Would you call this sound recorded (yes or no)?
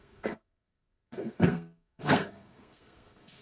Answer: no